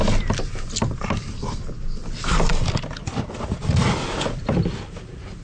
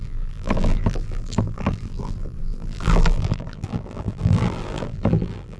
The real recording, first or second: first